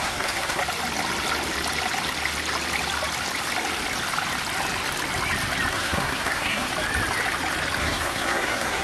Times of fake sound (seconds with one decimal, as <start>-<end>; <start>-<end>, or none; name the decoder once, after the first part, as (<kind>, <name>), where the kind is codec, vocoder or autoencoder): 0.0-0.6 (codec, SNAC); 5.7-6.7; 7.8-8.8